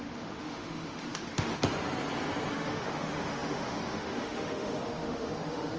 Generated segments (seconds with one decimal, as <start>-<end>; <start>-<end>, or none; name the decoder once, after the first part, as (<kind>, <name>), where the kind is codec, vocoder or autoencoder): 0.0-1.5 (autoencoder, DAC-VAE); 2.5-5.8